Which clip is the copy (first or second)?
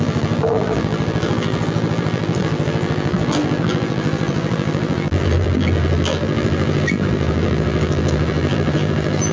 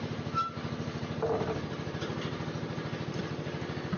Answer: first